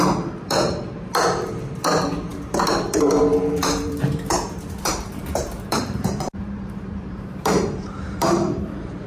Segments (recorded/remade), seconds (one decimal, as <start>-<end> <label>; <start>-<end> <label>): 0.0-9.1 remade